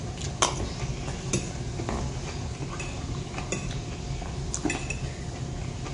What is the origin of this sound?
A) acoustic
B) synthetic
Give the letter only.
A